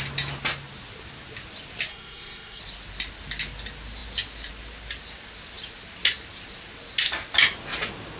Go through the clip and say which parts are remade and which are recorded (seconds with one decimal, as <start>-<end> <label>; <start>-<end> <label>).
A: 0.0-1.9 recorded; 1.9-2.6 remade; 2.6-8.2 recorded